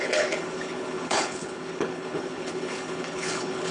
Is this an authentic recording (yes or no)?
no